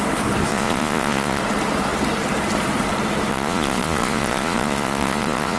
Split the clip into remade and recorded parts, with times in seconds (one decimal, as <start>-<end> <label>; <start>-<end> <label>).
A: 0.0-0.5 recorded; 0.5-1.4 remade; 1.4-3.3 recorded; 3.3-5.6 remade